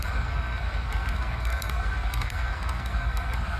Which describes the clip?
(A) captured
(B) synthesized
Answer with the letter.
B